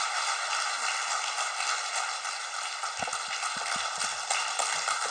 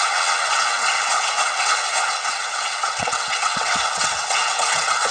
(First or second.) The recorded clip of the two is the first